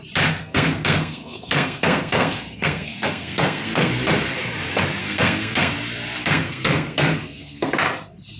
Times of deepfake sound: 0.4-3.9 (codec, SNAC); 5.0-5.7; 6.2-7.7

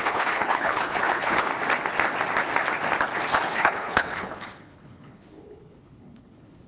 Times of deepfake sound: 0.0-1.5 (codec, HILCodec); 3.4-6.7

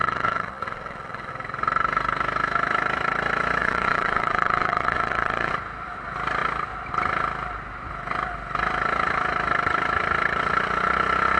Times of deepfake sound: 0.0-1.3 (vocoder, Vocos); 3.6-5.5